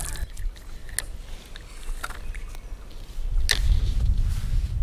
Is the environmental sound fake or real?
real